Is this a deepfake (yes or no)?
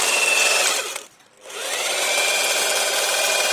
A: no